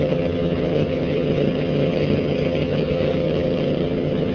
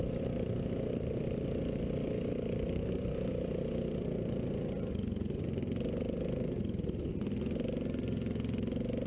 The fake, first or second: first